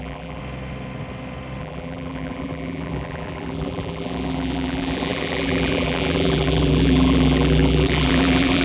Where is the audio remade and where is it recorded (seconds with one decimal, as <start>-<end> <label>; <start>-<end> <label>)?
0.0-0.4 remade; 0.4-1.6 recorded; 1.6-8.6 remade

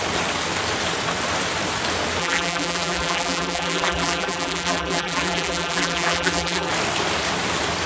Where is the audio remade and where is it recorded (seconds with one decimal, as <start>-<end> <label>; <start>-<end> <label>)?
0.0-2.2 recorded; 2.2-6.7 remade; 6.7-7.9 recorded

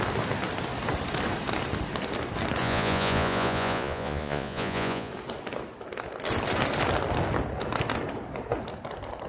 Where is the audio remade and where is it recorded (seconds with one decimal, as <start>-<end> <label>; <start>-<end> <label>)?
0.0-2.6 recorded; 2.6-5.1 remade; 5.1-9.3 recorded

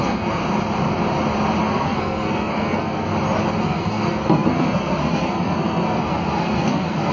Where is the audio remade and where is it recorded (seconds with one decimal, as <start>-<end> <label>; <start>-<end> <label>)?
0.0-0.4 remade; 0.4-1.6 recorded; 1.6-3.1 remade; 3.1-3.6 recorded; 3.6-7.1 remade

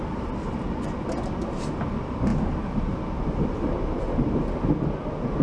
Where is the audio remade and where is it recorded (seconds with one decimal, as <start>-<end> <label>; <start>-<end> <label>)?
0.0-5.4 recorded

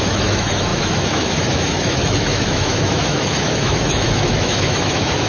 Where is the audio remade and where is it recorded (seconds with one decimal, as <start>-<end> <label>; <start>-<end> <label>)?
0.0-5.3 remade

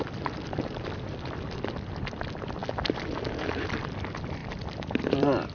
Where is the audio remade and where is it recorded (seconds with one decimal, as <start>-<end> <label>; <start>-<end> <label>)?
0.0-2.6 remade; 2.6-3.9 recorded; 3.9-5.5 remade